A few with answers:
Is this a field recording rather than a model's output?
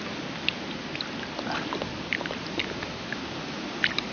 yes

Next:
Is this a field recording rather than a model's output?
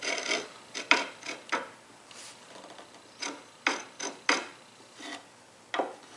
yes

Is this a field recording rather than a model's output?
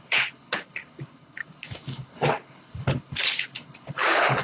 no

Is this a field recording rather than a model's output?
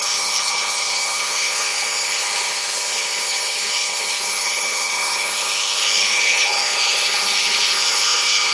no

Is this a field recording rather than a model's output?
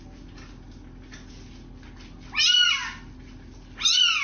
yes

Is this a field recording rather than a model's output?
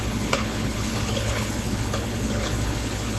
no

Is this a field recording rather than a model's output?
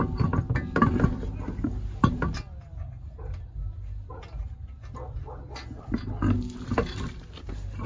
yes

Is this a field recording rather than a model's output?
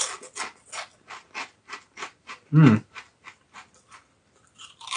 yes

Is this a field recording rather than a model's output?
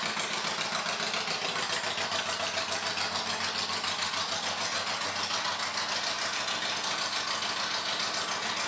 yes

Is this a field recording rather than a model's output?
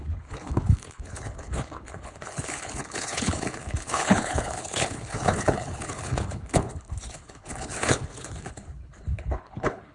no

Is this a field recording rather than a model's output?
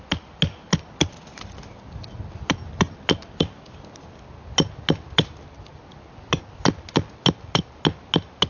yes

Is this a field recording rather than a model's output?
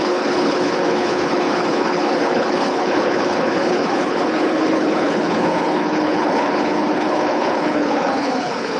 no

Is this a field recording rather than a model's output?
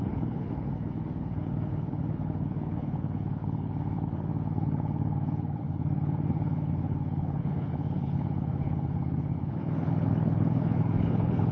no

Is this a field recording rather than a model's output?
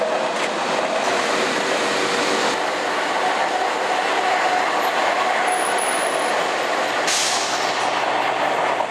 yes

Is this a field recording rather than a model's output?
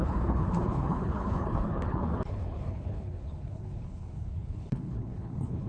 no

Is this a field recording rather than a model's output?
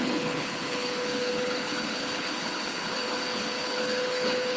no